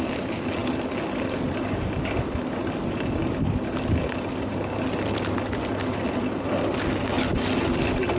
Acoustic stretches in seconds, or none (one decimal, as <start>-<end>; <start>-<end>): 0.0-8.2